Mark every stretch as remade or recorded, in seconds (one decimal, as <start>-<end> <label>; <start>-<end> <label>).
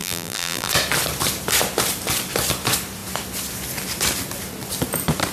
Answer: 0.0-0.7 remade; 0.7-5.3 recorded